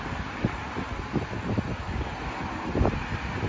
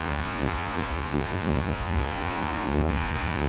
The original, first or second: first